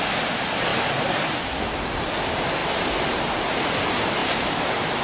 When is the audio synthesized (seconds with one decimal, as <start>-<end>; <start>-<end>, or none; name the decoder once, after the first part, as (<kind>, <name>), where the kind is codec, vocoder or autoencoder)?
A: none